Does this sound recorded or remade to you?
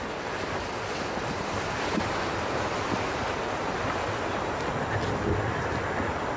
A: recorded